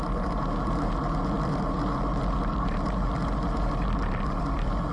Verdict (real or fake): real